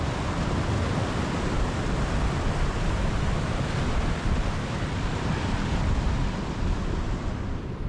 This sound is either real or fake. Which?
real